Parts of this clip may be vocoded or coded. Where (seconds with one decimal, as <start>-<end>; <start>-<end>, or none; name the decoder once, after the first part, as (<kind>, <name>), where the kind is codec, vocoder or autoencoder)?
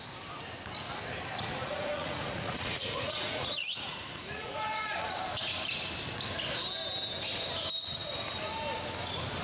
1.6-5.2 (vocoder, Vocos)